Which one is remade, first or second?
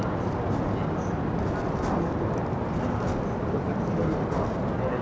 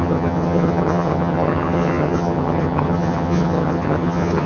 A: second